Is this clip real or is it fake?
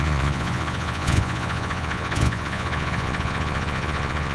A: fake